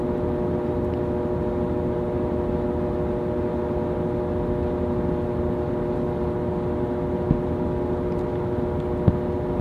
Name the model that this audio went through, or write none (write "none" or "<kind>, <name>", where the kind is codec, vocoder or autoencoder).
none